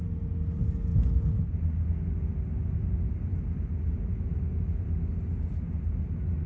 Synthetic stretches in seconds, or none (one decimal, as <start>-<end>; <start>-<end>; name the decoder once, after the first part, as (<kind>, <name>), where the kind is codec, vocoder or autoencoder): none